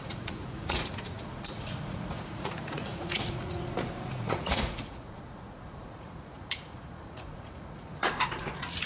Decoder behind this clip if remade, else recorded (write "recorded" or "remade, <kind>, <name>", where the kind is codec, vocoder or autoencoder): remade, vocoder, Vocos